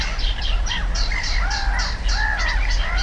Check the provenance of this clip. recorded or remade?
recorded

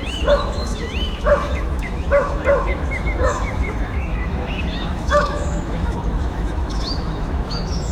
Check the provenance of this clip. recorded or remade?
remade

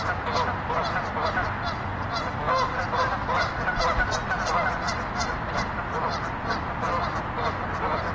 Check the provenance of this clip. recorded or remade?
recorded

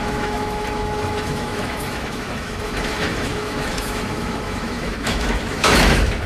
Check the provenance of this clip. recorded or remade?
remade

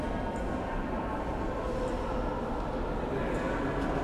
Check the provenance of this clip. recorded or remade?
recorded